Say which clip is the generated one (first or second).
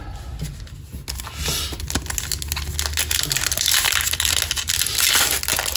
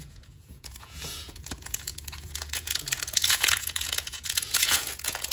second